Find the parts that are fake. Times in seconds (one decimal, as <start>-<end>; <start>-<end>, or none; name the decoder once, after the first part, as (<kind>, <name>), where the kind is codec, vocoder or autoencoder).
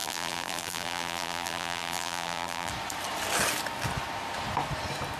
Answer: 0.0-2.7 (vocoder, BigVGAN v2)